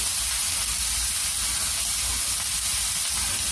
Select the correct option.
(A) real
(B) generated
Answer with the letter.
A